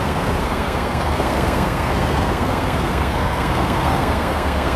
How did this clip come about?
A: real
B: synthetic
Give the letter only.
B